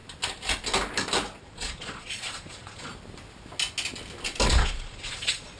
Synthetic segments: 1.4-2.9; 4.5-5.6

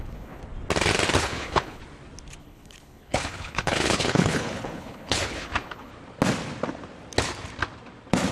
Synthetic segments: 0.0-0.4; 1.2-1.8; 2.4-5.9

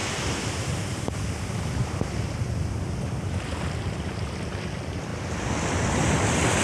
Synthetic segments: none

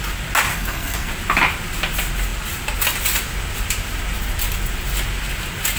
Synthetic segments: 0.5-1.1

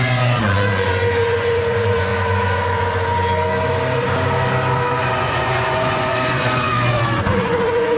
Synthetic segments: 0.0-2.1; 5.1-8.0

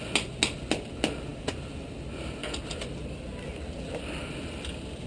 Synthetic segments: none

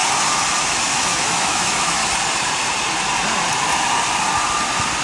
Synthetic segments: 1.0-2.0